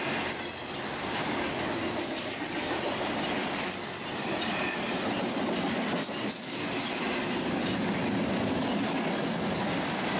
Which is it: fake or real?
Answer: real